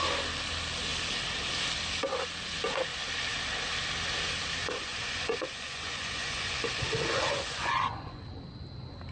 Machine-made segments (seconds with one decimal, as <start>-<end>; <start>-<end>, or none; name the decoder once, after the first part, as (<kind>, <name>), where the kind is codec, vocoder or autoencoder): 4.6-8.2 (vocoder, Vocos)